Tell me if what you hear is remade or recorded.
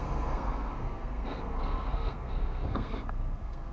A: remade